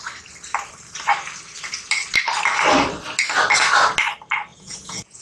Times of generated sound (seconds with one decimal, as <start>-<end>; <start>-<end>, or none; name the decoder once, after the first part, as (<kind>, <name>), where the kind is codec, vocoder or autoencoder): 4.5-5.2 (vocoder, Vocos)